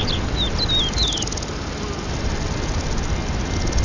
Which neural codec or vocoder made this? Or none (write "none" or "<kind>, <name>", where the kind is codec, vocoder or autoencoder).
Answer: none